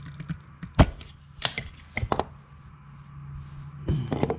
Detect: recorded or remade recorded